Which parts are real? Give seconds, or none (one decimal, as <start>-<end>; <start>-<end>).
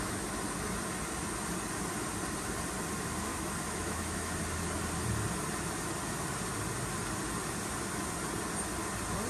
0.0-3.3; 4.4-9.3